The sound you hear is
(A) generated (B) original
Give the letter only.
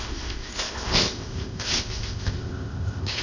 A